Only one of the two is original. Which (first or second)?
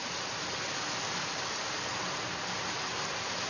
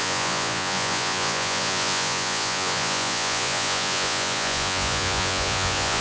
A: first